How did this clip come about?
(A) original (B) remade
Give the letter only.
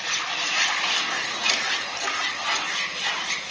A